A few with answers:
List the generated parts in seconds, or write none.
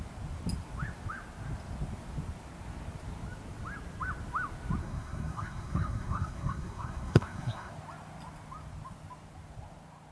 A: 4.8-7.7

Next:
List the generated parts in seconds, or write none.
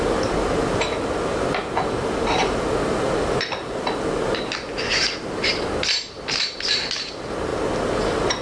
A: none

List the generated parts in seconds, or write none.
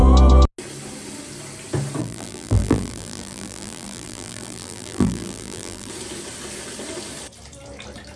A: 2.0-5.9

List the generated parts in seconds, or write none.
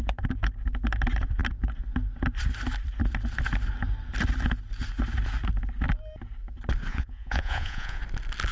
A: 6.9-8.0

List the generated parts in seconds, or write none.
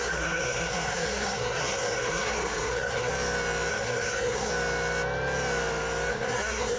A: 0.0-3.1; 3.7-4.5; 6.1-6.8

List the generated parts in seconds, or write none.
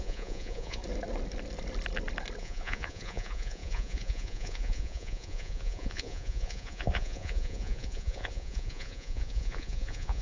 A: 0.0-0.8; 2.4-10.2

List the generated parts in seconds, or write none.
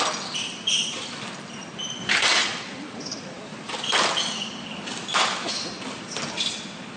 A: 5.0-5.6